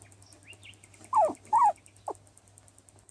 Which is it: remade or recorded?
recorded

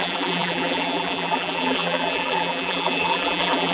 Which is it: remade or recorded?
remade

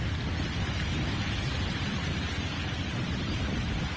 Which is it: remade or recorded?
remade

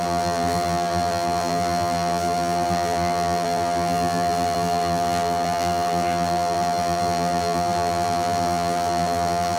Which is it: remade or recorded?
remade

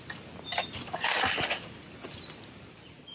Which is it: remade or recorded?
recorded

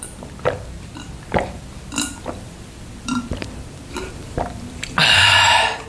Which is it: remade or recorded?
remade